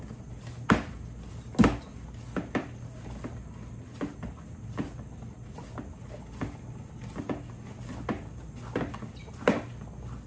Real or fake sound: real